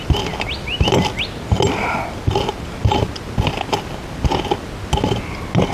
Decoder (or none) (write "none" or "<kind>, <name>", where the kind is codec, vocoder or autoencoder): none